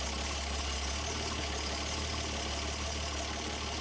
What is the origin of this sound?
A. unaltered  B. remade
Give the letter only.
A